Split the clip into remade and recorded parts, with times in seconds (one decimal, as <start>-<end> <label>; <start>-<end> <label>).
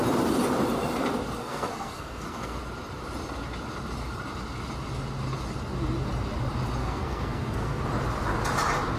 0.0-1.4 recorded; 1.4-2.6 remade; 2.6-6.8 recorded; 6.8-7.8 remade; 7.8-9.0 recorded